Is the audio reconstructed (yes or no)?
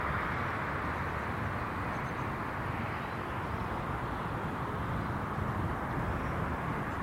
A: no